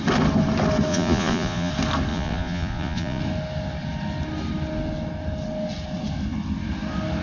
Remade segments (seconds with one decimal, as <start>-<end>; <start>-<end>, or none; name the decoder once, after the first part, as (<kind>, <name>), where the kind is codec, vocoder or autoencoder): 0.9-1.7 (vocoder, Vocos); 2.1-3.2